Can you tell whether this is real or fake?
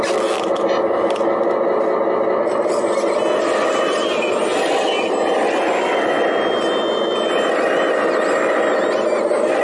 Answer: real